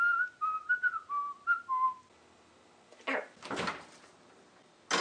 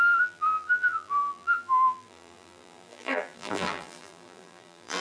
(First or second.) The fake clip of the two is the second